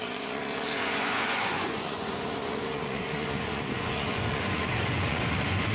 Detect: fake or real fake